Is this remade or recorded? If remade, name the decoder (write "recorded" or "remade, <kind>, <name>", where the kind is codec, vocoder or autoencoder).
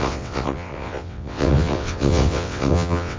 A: remade, vocoder, WaveNeXt